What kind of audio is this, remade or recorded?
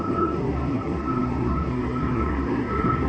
remade